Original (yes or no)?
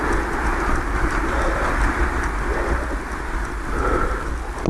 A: yes